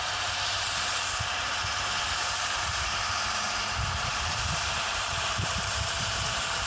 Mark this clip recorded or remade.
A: remade